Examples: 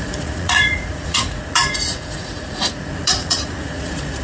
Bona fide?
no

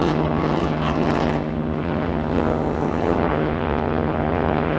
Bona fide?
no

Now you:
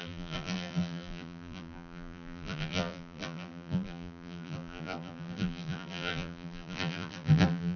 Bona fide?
no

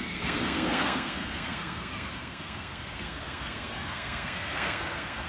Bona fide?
no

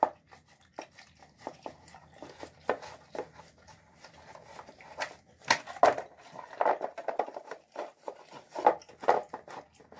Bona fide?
yes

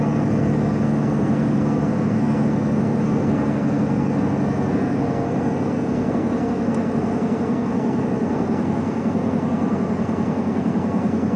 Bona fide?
no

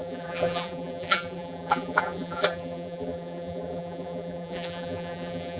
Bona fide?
no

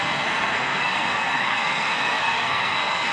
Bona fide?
no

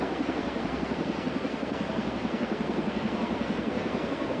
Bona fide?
no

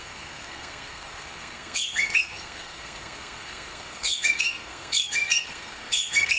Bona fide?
no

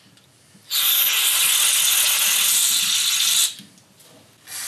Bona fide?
yes